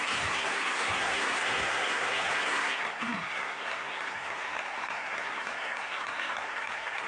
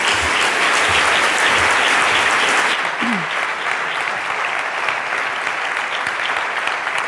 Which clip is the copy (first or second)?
first